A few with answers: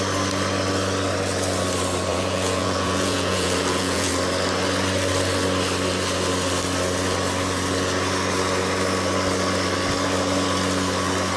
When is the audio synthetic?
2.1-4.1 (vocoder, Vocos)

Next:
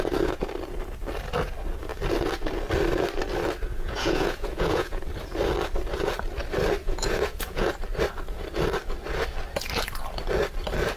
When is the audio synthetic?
3.7-5.0 (vocoder, Vocos); 6.8-7.7

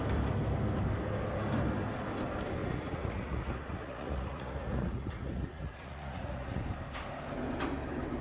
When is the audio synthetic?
2.6-6.6 (vocoder, Vocos)

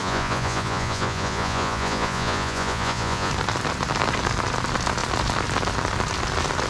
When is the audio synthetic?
0.0-3.3 (vocoder, Vocos)